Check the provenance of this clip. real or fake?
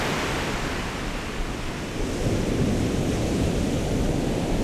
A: real